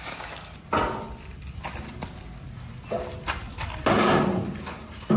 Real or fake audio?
real